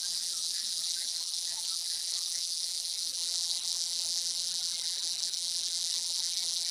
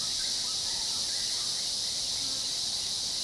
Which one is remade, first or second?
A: first